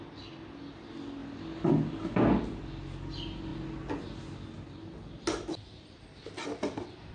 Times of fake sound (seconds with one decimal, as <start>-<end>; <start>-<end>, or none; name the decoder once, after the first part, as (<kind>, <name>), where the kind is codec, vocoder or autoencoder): none